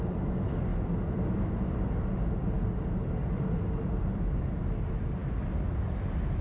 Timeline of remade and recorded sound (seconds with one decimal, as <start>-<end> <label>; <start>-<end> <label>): 0.0-6.4 recorded